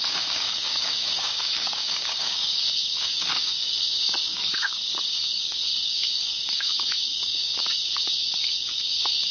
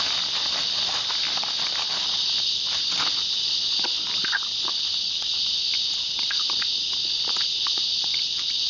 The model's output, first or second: first